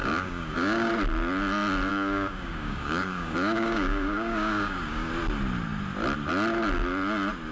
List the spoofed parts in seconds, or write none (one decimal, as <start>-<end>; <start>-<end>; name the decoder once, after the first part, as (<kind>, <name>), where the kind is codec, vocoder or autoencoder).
0.0-0.9 (codec, DAC); 1.9-5.1